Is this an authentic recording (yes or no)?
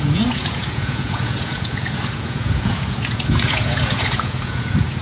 no